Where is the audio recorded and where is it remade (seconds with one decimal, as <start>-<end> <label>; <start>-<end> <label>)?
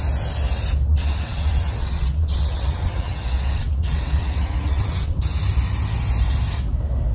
0.0-0.9 recorded; 0.9-5.2 remade; 5.2-7.1 recorded